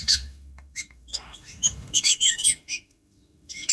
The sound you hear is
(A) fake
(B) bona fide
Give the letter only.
A